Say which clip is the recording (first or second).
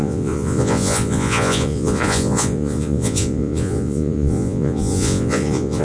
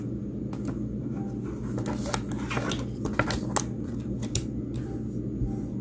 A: second